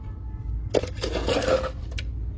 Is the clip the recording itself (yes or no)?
yes